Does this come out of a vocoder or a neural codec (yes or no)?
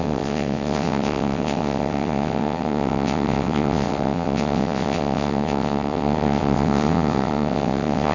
yes